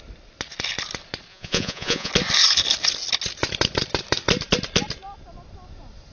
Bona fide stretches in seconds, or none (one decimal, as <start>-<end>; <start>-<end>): 0.0-1.3; 2.1-6.1